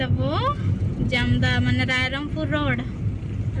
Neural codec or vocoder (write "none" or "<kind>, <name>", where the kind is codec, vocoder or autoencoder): none